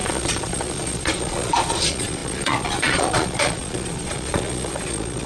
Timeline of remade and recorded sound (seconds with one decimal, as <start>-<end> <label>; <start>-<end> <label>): 0.0-5.3 remade

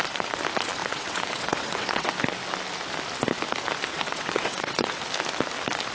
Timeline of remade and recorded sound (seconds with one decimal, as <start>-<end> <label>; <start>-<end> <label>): 0.0-0.8 recorded; 0.8-2.1 remade; 2.1-3.9 recorded; 3.9-5.0 remade; 5.0-5.9 recorded